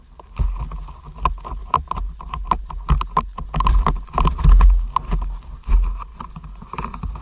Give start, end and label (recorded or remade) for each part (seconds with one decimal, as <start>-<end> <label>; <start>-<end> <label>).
0.0-1.6 recorded; 1.6-4.4 remade; 4.4-6.1 recorded; 6.1-7.2 remade

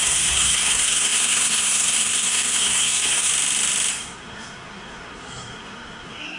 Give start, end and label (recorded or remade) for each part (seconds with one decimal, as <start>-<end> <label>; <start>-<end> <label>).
0.0-3.3 remade; 3.3-3.9 recorded; 3.9-6.4 remade

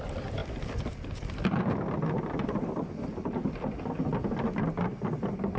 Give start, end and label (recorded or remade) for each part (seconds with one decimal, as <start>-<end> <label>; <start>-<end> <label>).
0.0-5.6 recorded

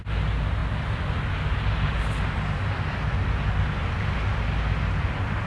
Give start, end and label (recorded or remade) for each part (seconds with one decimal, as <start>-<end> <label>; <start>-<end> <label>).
0.0-5.5 recorded

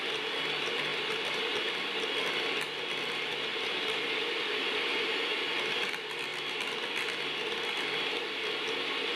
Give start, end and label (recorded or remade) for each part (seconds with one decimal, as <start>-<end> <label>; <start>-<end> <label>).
0.0-9.2 recorded

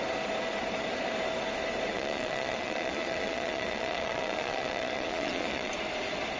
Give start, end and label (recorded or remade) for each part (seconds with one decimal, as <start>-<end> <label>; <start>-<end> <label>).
0.0-1.9 recorded; 1.9-5.7 remade; 5.7-6.4 recorded

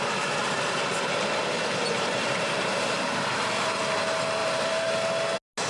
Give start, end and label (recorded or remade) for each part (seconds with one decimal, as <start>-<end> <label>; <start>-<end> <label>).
0.0-0.4 recorded; 0.4-3.8 remade; 3.8-4.4 recorded; 4.4-4.9 remade; 4.9-5.7 recorded

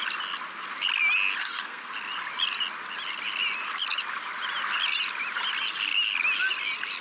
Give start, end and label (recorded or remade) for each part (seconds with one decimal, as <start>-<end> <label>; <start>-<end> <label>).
0.0-1.4 recorded; 1.4-1.9 remade; 1.9-7.0 recorded